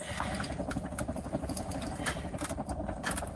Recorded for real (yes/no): yes